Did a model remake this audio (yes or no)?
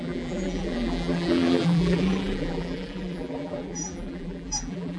yes